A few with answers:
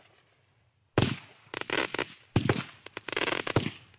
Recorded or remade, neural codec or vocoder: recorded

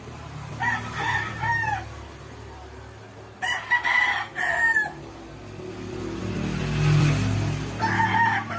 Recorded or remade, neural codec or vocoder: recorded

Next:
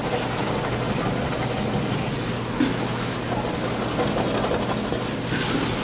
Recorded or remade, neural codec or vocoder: recorded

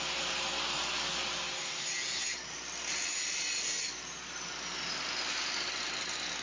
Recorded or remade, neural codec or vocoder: recorded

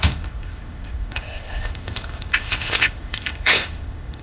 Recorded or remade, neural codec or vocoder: remade, codec, ZipCodec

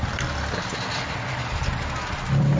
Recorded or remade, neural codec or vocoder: recorded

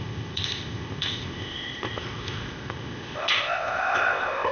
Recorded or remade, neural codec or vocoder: remade, codec, ZipCodec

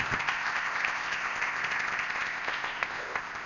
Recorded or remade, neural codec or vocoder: remade, codec, ZipCodec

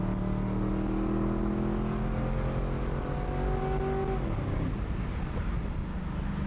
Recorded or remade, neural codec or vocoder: recorded